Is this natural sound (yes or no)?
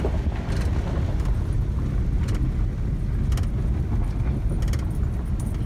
yes